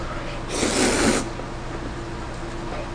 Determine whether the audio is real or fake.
real